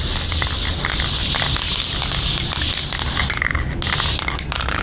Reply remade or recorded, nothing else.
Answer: recorded